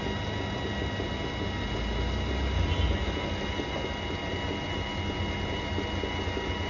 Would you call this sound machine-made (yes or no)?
no